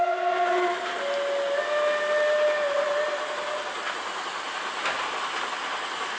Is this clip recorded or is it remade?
recorded